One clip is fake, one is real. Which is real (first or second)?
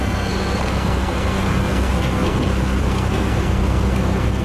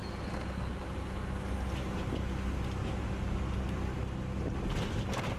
second